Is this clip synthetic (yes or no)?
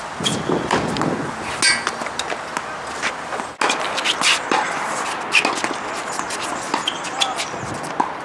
no